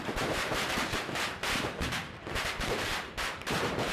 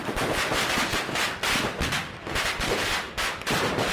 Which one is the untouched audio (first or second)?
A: second